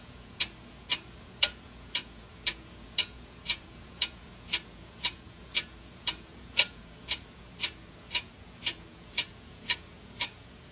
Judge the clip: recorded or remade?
remade